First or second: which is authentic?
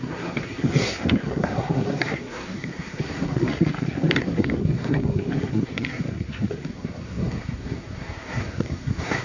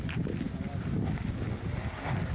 second